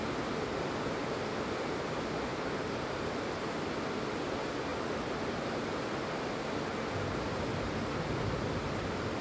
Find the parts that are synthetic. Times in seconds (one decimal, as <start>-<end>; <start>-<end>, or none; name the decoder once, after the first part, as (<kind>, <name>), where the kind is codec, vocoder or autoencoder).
2.3-3.1 (vocoder, BigVGAN v2)